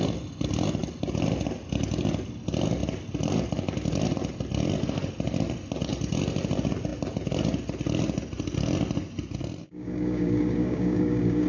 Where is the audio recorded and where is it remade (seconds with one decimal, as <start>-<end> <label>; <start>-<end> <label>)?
0.0-9.6 recorded; 9.6-11.5 remade